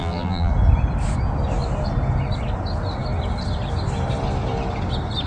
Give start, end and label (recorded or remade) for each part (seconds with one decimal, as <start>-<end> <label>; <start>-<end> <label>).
0.0-0.5 remade; 0.5-5.3 recorded